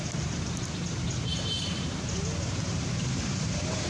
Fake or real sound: fake